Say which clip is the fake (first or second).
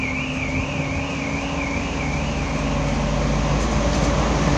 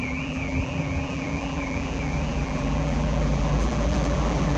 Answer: second